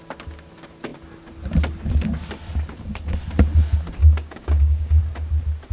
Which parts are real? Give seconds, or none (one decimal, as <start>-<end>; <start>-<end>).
0.0-4.0; 5.0-5.7